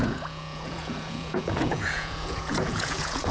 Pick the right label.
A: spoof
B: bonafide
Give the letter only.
A